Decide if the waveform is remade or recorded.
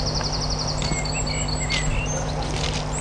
recorded